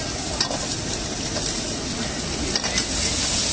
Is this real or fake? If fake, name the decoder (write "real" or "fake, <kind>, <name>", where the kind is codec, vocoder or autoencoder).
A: real